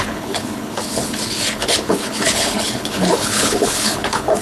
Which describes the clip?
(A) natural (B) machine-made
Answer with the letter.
B